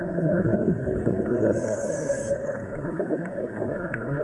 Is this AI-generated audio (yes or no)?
yes